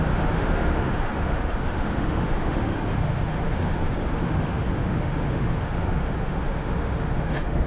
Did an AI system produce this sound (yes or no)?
yes